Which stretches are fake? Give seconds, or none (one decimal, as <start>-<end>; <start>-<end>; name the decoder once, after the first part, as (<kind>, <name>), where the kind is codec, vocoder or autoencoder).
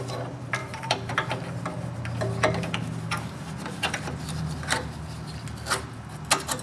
0.6-1.3 (vocoder, BigVGAN v2)